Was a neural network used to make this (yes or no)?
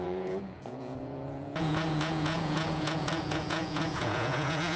yes